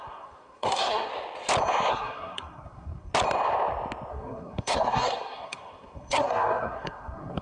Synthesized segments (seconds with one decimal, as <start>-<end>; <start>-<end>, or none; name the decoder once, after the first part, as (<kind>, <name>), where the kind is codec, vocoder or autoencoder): 0.0-1.1 (codec, SNAC); 1.9-3.1; 4.1-7.4